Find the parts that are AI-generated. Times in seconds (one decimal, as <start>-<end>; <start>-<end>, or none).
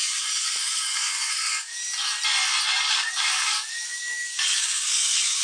0.0-1.8; 2.9-5.4